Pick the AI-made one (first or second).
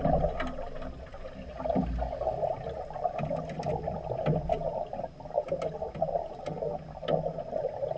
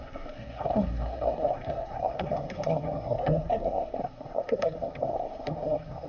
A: second